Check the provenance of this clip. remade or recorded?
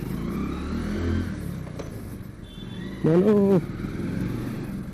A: recorded